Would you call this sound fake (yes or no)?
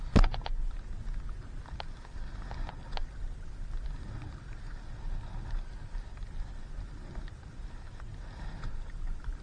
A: no